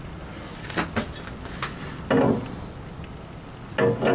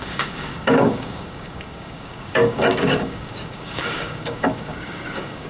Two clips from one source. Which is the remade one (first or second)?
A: second